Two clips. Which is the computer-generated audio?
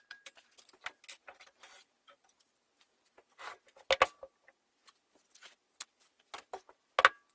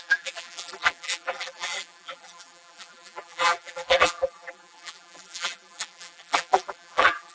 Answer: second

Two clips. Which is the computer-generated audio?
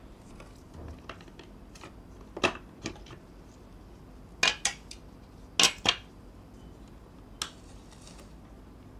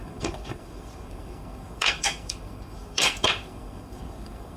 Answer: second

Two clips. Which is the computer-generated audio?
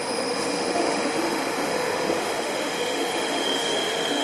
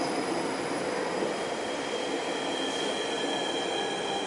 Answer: first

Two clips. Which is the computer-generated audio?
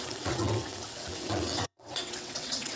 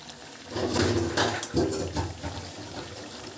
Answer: first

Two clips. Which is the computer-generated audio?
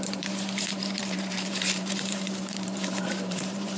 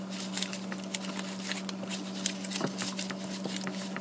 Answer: first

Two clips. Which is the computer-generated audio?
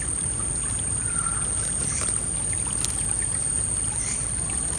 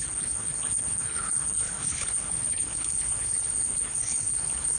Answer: second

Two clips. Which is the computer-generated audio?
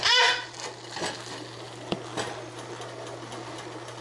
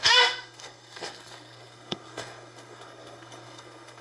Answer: second